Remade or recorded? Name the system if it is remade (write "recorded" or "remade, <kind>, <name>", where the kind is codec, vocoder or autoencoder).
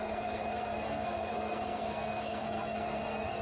remade, codec, SNAC